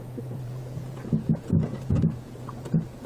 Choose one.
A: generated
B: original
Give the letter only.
A